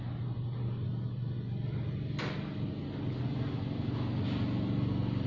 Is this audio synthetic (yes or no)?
no